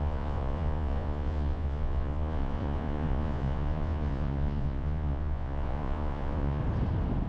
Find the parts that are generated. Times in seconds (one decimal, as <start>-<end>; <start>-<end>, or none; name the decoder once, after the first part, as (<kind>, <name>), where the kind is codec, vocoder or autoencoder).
0.0-6.6 (vocoder, Vocos)